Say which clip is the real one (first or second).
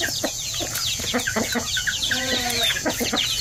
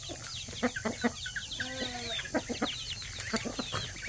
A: second